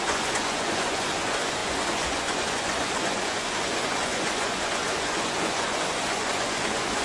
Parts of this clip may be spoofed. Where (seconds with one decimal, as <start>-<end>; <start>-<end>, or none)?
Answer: 0.0-7.0